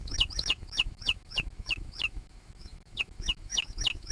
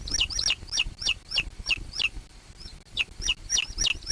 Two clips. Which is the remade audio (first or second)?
first